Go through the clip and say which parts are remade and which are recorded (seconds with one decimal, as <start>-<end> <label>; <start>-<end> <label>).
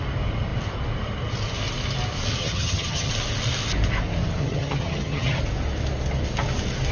0.0-2.4 recorded; 2.4-3.1 remade; 3.1-4.4 recorded; 4.4-5.4 remade; 5.4-6.9 recorded